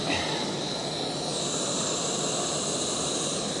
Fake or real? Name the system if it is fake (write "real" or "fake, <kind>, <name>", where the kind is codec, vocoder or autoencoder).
real